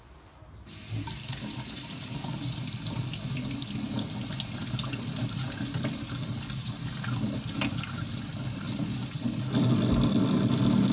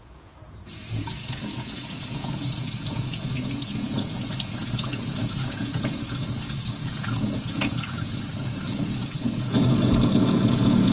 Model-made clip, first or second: second